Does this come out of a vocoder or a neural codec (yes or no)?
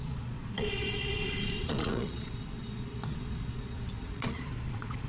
yes